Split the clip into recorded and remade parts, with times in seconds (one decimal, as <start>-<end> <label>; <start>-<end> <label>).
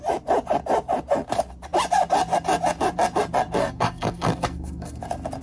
0.0-3.6 recorded; 3.6-5.0 remade; 5.0-5.4 recorded